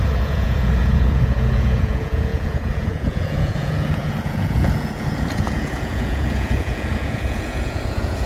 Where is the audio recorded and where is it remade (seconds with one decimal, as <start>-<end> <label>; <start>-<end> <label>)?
0.0-8.3 remade